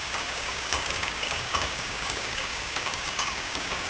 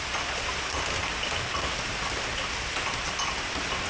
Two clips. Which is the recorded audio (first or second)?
second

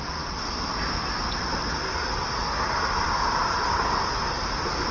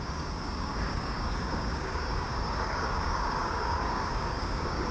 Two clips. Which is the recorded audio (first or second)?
first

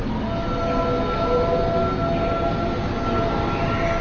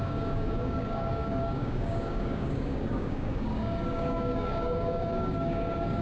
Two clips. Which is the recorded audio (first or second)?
first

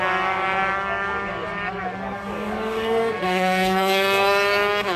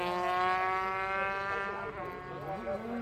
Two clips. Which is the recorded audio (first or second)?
second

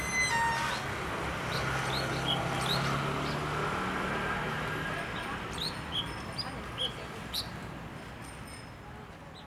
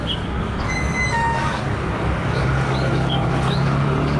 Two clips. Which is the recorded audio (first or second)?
first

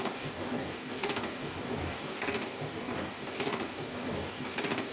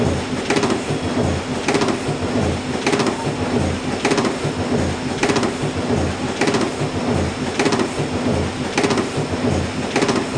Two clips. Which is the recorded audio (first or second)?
second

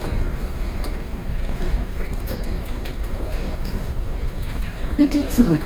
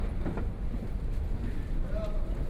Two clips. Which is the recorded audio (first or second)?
second